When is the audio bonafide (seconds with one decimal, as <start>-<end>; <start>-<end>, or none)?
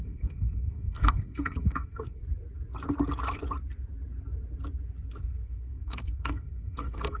2.2-5.2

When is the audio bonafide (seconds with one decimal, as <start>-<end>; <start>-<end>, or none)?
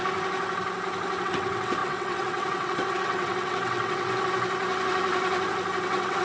0.0-1.2; 4.1-5.8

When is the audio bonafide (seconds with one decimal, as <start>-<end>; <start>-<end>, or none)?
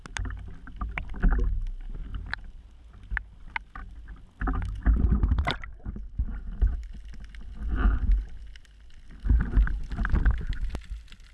0.0-2.1; 2.8-6.3; 6.8-11.3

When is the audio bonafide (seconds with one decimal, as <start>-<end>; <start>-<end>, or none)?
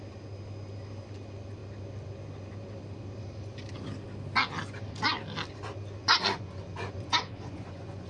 0.0-6.0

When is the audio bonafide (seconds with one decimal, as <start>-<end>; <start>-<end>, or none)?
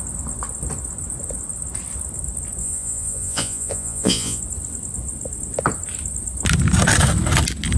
0.0-2.6; 4.4-7.8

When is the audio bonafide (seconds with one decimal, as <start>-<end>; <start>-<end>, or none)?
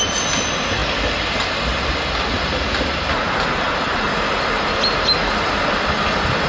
0.0-6.5